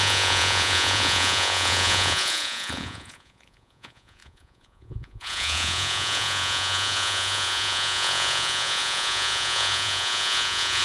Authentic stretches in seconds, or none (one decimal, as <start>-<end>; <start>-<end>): none